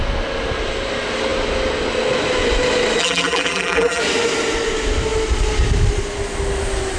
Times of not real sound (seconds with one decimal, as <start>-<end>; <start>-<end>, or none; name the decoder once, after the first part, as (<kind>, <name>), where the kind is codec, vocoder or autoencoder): 3.0-4.0 (vocoder, BigVGAN v2)